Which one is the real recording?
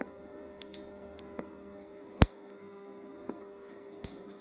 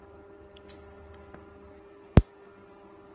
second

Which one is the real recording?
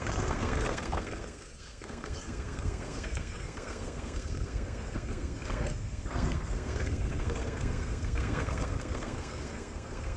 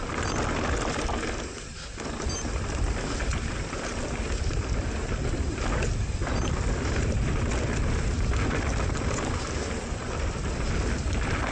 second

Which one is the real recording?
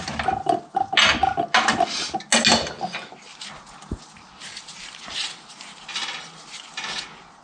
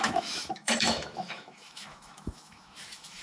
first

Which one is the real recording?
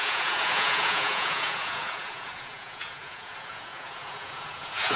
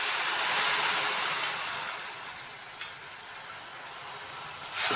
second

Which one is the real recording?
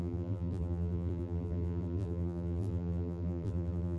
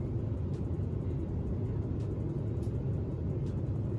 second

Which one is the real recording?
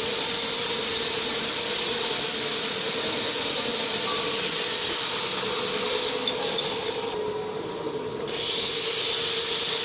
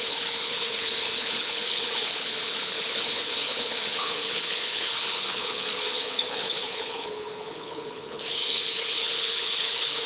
first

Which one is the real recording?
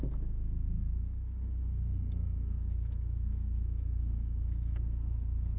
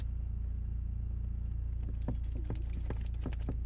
second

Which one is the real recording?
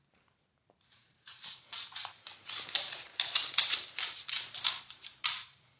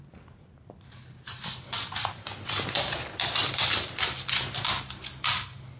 second